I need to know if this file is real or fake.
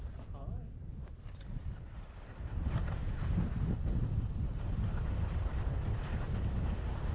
fake